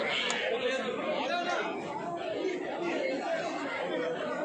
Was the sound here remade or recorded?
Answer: recorded